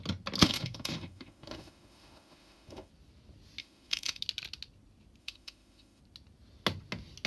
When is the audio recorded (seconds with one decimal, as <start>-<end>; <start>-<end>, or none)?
0.0-0.4; 2.9-3.6; 4.2-5.2; 6.0-7.3